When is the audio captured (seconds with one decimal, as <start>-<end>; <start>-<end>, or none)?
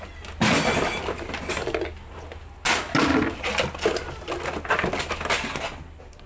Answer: 0.0-6.3